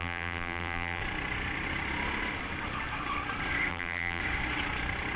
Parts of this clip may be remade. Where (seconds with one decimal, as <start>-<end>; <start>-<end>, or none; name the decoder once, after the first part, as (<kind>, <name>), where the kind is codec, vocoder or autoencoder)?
0.0-1.0 (vocoder, BigVGAN v2); 3.7-4.2